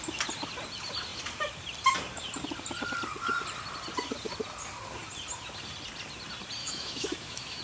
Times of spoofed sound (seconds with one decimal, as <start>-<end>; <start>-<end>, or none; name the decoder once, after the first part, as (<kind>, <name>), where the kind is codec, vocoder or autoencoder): 6.6-7.6 (autoencoder, DAC-VAE)